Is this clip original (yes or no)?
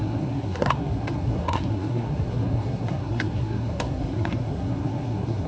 no